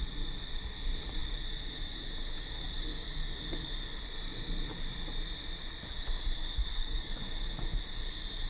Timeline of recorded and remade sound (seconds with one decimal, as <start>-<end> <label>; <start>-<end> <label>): 0.0-6.7 recorded; 6.7-7.2 remade; 7.2-8.5 recorded